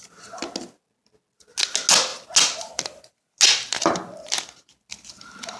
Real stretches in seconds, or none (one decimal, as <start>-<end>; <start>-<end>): 0.0-5.6